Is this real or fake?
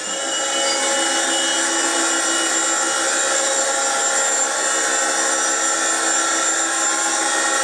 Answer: real